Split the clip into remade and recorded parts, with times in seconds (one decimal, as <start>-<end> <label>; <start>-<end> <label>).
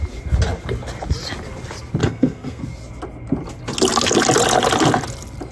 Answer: 0.0-2.0 recorded; 2.0-2.6 remade; 2.6-5.5 recorded